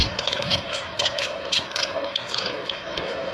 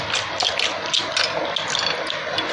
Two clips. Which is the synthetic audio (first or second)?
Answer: first